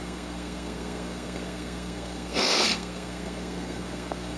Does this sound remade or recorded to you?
remade